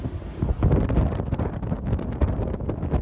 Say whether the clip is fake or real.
real